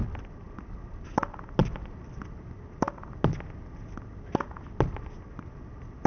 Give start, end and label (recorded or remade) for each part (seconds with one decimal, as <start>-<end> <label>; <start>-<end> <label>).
0.0-6.1 recorded